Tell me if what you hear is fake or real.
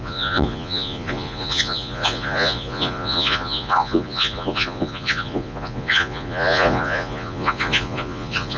fake